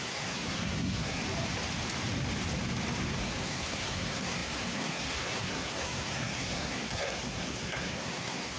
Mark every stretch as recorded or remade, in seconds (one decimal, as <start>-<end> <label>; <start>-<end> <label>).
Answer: 0.0-1.2 remade; 1.2-3.2 recorded; 3.2-8.6 remade